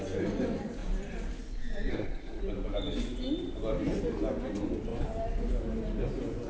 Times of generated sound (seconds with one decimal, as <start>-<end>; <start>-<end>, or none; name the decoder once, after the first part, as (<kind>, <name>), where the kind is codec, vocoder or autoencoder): 1.9-2.4 (codec, SNAC)